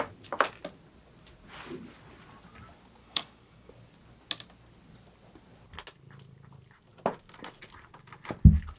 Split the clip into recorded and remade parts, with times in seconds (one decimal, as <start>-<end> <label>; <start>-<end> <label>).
0.0-3.0 recorded; 3.0-3.7 remade; 3.7-8.8 recorded